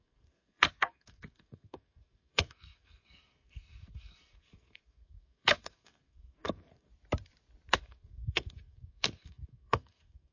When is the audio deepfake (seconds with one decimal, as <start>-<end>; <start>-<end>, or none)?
0.0-6.9; 7.7-10.3